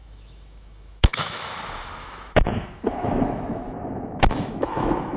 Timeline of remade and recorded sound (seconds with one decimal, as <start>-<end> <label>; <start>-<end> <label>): 0.0-1.5 remade; 1.5-2.0 recorded; 2.0-5.2 remade